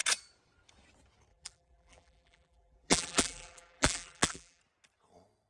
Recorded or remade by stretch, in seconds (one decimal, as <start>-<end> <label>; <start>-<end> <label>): 0.0-1.3 recorded; 1.3-4.6 remade; 4.6-5.5 recorded